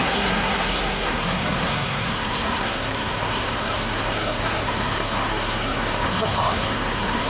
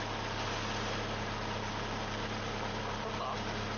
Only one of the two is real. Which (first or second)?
second